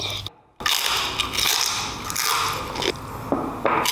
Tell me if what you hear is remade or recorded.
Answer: recorded